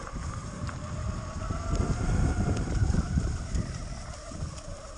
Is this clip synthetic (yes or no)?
yes